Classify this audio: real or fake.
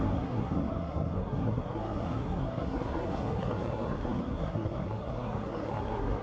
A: fake